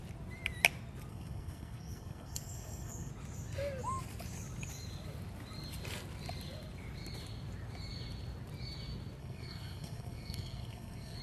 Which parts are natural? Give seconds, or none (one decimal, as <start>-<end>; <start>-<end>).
0.0-1.1; 3.1-9.2

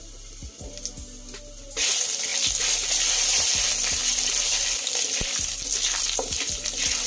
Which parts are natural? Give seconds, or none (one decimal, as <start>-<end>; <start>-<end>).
0.0-1.9

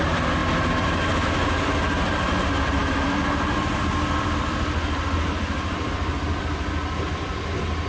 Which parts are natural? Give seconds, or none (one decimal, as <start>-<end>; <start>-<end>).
0.4-1.2

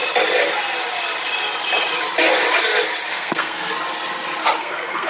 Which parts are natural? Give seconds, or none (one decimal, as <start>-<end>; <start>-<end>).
0.0-3.1; 3.7-4.6

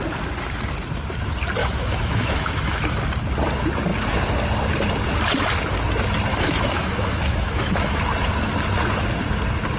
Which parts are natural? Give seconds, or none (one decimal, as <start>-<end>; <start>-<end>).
0.0-1.6; 2.8-6.3; 8.0-9.8